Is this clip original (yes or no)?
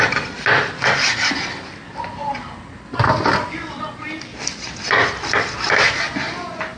yes